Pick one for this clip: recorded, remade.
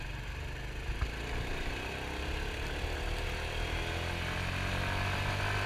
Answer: recorded